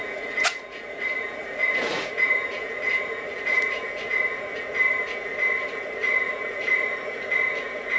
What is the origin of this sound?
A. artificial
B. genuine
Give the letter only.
A